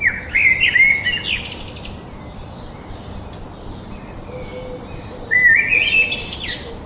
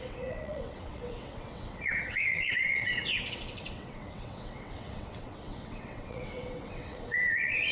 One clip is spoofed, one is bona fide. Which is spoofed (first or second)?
second